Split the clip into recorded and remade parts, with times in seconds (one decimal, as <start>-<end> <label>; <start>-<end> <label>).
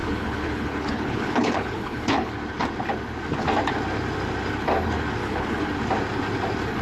0.0-2.3 remade; 2.3-5.2 recorded; 5.2-5.7 remade; 5.7-6.8 recorded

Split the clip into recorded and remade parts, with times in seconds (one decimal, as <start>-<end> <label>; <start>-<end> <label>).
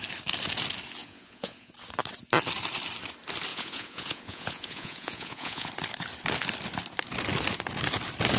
0.0-1.0 recorded; 1.0-1.7 remade; 1.7-3.5 recorded; 3.5-5.7 remade; 5.7-8.4 recorded